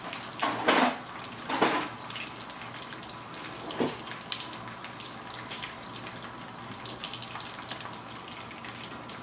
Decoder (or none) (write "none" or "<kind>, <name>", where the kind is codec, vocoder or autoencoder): none